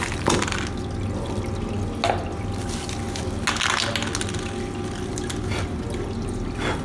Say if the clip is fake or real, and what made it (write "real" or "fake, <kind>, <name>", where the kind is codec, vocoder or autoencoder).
real